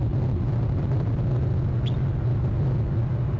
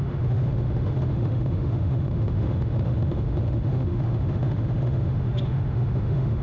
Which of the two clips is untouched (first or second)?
first